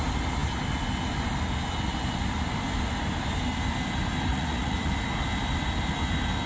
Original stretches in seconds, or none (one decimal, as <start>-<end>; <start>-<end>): 0.0-4.3; 4.9-6.5